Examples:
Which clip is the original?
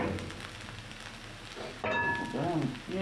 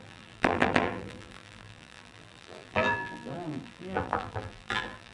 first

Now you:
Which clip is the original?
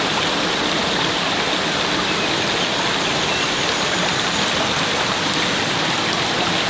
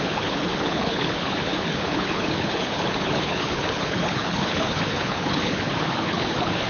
first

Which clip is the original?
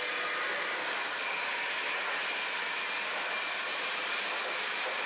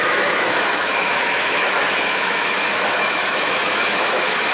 first